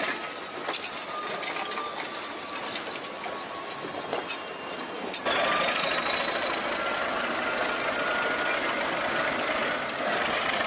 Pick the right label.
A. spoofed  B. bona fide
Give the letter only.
B